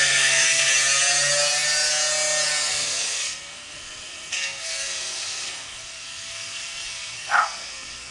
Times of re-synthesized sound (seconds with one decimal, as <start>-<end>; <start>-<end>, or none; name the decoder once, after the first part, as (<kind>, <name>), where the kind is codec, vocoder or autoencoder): 0.0-0.7 (codec, SNAC); 2.7-8.1